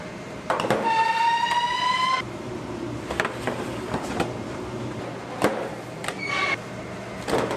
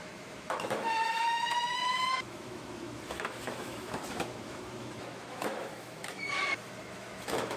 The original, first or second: first